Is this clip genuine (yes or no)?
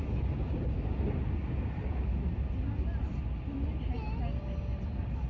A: yes